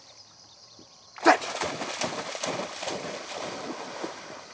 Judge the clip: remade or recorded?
recorded